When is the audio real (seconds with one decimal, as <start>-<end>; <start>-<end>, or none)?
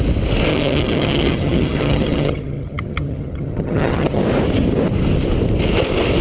0.0-0.5; 4.2-6.2